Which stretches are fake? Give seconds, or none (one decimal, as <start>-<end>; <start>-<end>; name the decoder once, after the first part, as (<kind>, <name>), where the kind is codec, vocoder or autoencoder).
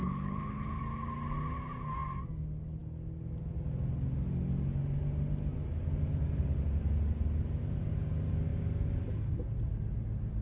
0.0-0.8 (codec, HILCodec)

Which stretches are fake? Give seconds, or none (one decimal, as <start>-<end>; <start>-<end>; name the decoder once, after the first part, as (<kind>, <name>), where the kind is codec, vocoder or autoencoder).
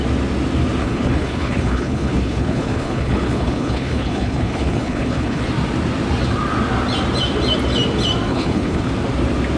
0.8-5.4 (codec, HILCodec); 8.3-8.9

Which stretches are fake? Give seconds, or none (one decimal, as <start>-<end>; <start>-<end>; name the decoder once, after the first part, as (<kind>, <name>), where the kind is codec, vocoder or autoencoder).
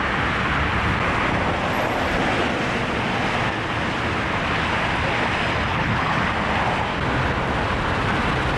5.7-6.2 (codec, HILCodec)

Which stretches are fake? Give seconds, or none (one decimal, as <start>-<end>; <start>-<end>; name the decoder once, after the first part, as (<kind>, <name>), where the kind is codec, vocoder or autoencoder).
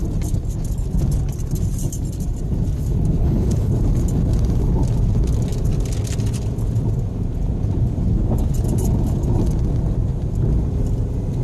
3.2-3.7 (codec, HILCodec)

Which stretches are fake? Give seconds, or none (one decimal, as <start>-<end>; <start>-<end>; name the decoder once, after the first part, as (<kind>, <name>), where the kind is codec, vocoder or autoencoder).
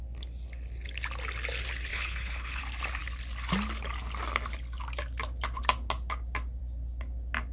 1.9-2.6 (codec, HILCodec)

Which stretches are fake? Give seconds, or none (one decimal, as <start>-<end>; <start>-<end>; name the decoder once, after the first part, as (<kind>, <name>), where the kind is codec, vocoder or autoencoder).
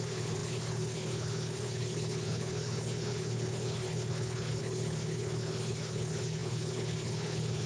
0.0-7.7 (codec, HILCodec)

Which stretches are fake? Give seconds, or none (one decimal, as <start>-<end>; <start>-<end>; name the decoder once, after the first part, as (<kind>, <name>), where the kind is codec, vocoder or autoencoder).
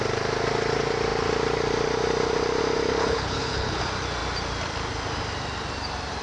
3.0-3.8 (codec, HILCodec)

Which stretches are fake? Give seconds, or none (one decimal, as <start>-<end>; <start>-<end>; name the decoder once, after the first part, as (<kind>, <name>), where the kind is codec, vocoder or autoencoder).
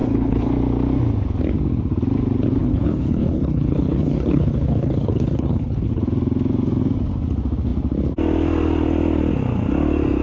0.0-0.5 (codec, HILCodec); 2.6-6.0